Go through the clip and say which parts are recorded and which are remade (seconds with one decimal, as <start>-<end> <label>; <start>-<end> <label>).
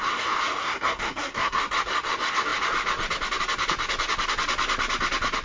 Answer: 0.0-0.6 recorded; 0.6-1.6 remade; 1.6-5.4 recorded